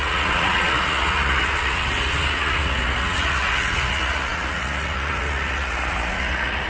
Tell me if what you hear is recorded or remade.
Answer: remade